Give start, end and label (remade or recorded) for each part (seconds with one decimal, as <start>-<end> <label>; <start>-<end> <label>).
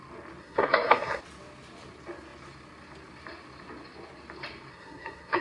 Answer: 0.0-0.4 recorded; 0.4-1.2 remade; 1.2-4.7 recorded; 4.7-5.4 remade